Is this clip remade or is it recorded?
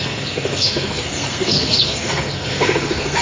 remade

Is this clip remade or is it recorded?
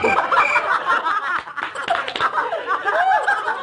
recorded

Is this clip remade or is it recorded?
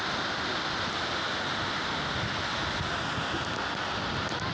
recorded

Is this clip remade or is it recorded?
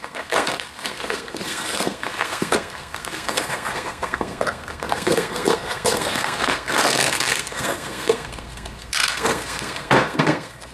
remade